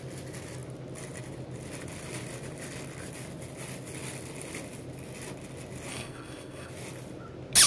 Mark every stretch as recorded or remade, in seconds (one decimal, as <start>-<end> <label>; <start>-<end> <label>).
0.0-5.9 recorded; 5.9-6.7 remade; 6.7-7.7 recorded